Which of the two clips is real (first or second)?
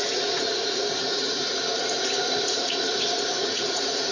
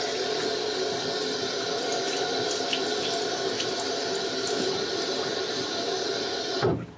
second